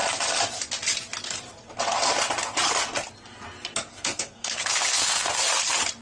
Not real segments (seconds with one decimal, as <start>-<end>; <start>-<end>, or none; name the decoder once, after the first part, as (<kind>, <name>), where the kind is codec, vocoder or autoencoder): 3.9-5.4 (codec, SNAC)